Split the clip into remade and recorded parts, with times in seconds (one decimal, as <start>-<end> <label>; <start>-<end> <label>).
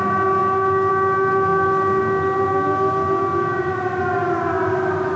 0.0-5.2 recorded